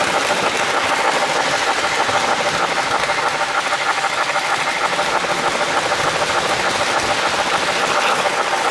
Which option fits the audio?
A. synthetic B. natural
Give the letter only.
B